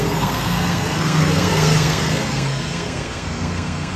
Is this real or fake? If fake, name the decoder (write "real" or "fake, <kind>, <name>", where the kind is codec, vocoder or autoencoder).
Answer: fake, codec, SNAC